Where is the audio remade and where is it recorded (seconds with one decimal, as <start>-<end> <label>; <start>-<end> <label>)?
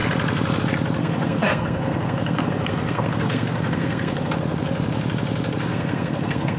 0.0-1.0 recorded; 1.0-4.3 remade; 4.3-5.7 recorded; 5.7-6.6 remade